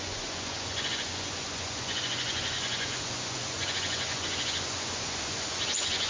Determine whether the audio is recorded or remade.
remade